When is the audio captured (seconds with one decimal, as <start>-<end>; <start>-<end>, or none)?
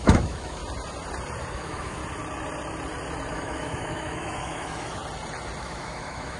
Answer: 0.6-1.5; 2.0-3.3; 5.0-5.6